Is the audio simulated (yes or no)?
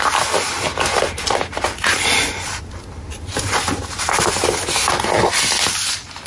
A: no